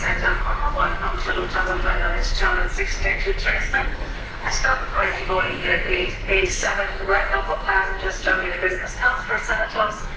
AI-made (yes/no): yes